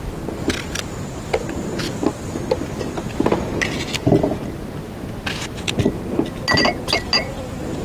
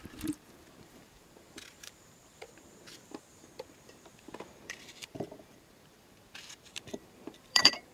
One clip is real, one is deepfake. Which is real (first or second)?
first